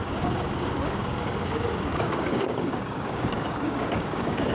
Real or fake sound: fake